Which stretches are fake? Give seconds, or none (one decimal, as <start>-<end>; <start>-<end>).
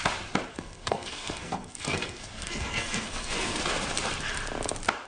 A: 0.5-3.6